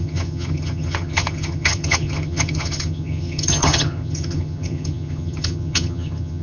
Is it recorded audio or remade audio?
remade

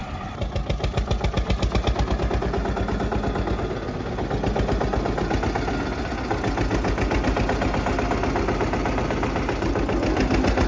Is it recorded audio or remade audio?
recorded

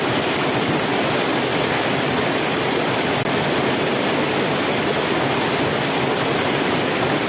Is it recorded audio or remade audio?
recorded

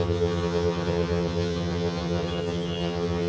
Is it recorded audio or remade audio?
remade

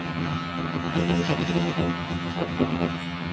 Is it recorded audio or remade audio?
remade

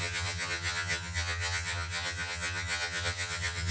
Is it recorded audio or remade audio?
remade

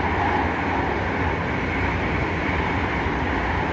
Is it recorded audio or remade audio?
recorded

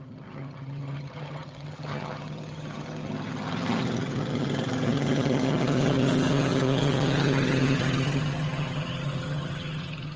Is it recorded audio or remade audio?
remade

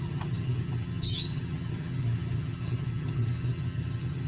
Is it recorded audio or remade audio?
remade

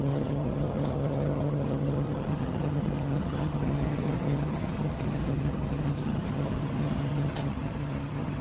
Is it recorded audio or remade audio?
remade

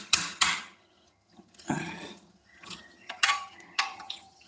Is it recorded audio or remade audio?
remade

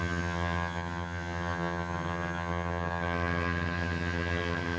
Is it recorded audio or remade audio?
remade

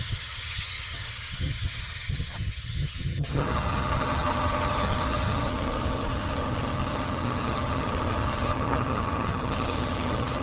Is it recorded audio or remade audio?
remade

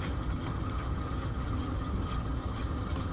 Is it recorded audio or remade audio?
remade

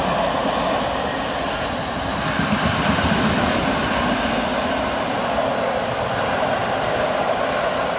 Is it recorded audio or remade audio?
recorded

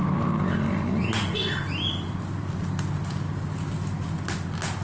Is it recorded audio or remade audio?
recorded